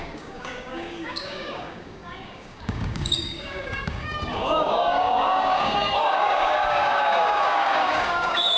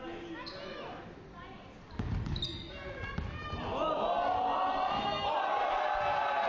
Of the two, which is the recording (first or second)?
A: second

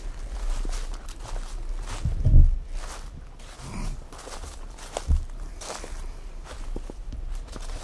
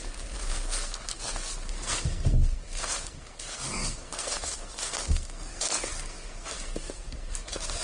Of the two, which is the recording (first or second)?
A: first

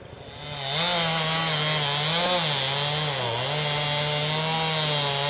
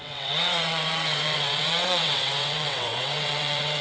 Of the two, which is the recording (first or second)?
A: first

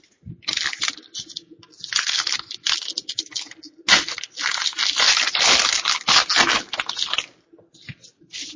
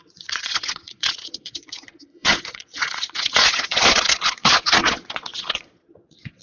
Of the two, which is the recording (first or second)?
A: first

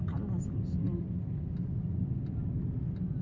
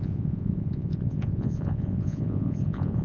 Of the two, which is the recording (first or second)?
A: first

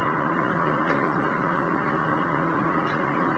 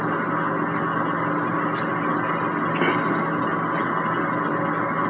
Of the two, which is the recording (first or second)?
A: second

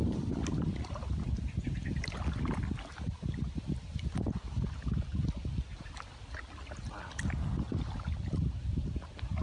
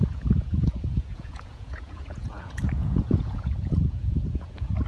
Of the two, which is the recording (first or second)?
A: first